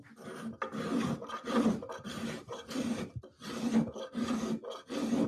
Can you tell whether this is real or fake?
real